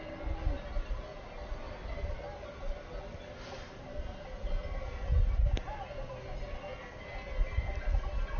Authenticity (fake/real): real